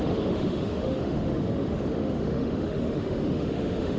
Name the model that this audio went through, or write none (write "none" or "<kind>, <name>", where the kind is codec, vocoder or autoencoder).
autoencoder, DAC-VAE